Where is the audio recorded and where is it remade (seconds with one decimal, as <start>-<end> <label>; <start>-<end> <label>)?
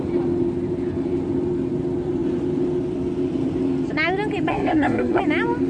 0.0-4.5 recorded; 4.5-5.2 remade; 5.2-5.7 recorded